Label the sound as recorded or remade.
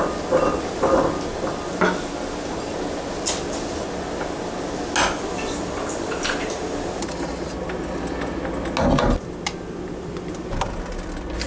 recorded